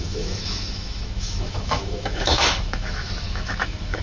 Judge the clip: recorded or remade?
remade